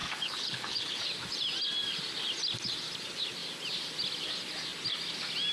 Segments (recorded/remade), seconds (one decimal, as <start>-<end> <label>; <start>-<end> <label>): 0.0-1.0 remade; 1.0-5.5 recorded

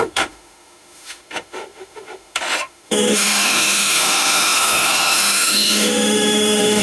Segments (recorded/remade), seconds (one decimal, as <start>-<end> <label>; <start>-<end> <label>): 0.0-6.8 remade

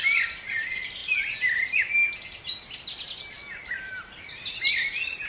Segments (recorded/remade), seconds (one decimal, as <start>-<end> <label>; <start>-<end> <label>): 0.0-5.3 recorded